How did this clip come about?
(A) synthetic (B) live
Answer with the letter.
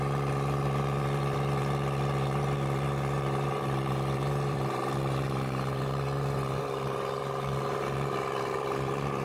A